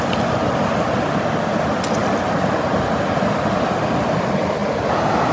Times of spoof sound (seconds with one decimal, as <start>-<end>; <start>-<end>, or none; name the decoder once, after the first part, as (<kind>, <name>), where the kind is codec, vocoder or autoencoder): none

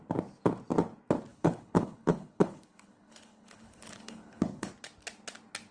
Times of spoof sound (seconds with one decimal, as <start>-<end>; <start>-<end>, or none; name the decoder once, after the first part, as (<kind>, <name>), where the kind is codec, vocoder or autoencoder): 1.3-4.7 (codec, HILCodec)

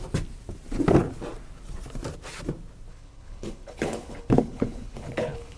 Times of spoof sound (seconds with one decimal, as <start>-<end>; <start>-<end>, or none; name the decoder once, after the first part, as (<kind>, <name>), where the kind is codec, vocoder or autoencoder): 2.9-5.6 (codec, HILCodec)

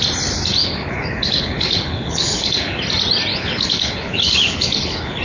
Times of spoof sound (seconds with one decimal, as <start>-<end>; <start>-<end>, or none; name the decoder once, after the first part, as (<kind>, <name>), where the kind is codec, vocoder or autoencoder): 0.6-2.8 (codec, HILCodec); 3.3-5.2